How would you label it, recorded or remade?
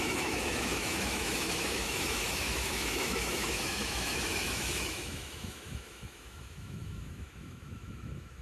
remade